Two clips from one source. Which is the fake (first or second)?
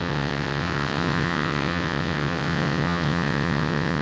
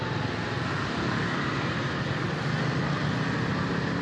first